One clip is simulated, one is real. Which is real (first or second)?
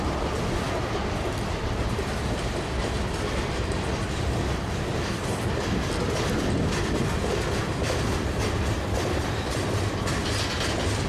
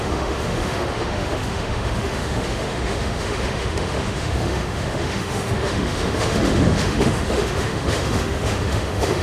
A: first